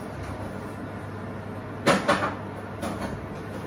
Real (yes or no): yes